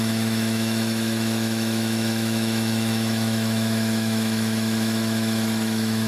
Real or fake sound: fake